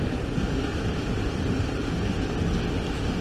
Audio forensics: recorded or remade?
recorded